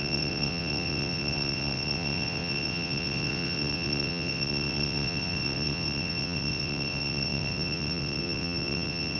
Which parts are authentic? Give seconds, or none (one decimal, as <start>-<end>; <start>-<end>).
none